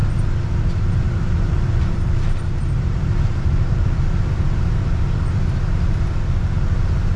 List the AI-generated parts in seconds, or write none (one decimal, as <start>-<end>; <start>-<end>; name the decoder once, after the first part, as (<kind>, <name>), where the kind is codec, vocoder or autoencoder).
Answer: 0.0-4.3 (vocoder, BigVGAN v2)